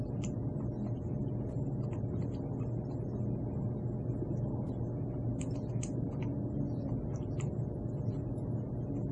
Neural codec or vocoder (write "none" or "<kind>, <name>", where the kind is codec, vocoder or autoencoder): none